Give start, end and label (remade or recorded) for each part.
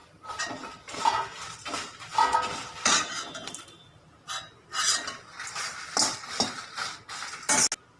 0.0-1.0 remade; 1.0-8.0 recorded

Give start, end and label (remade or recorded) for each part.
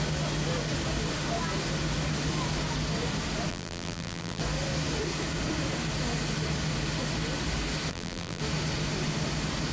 0.0-3.5 recorded; 3.5-4.4 remade; 4.4-7.9 recorded; 7.9-8.4 remade; 8.4-9.7 recorded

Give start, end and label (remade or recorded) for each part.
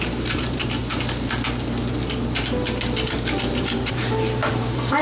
0.0-0.8 remade; 0.8-3.5 recorded; 3.5-5.0 remade